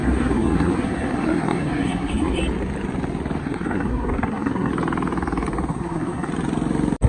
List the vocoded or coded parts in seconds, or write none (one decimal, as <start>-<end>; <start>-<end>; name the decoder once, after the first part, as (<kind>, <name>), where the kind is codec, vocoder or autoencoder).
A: 0.0-2.4 (codec, SNAC); 3.4-4.7; 5.7-6.3